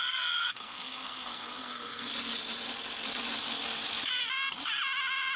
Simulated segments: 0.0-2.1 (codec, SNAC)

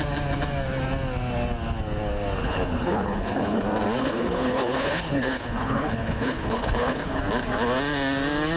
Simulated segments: 2.4-3.6 (codec, HILCodec); 4.0-7.2

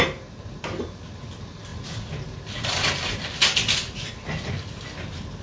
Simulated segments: none

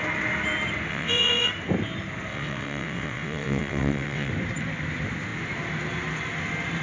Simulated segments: 0.9-1.5 (vocoder, WaveNeXt); 2.3-4.3